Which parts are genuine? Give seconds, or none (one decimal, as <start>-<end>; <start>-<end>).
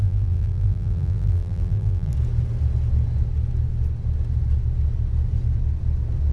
2.1-6.3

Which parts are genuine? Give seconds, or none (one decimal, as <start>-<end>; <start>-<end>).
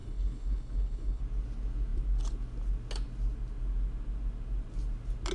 1.2-5.3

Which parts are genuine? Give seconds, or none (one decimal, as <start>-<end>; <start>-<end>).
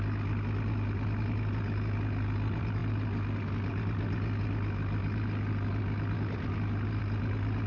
0.0-7.7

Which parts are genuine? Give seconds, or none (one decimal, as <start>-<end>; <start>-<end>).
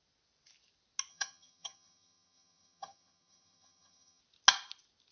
0.0-1.1; 4.2-5.1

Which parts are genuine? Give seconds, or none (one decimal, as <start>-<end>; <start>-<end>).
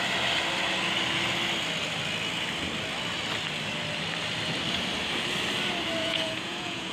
0.0-6.0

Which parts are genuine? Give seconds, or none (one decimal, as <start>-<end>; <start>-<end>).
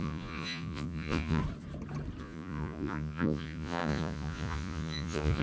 1.4-2.2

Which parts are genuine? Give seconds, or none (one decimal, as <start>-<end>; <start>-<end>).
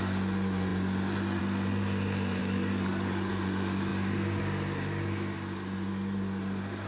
0.0-2.4; 3.3-6.9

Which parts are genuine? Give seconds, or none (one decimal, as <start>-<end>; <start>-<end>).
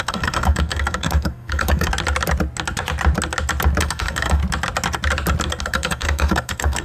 1.9-3.8; 4.4-5.6